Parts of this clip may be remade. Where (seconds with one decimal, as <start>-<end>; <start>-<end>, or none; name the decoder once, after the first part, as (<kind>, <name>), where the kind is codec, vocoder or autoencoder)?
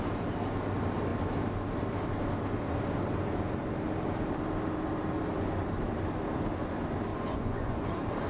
7.1-7.9 (vocoder, Vocos)